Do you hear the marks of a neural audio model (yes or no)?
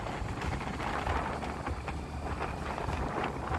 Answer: no